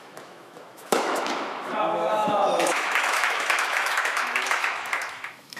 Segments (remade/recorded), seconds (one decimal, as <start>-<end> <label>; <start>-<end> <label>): 0.0-5.6 remade